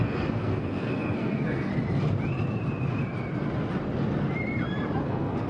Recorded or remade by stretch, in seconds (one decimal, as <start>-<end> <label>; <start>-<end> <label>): 0.0-1.7 remade; 1.7-5.0 recorded; 5.0-5.5 remade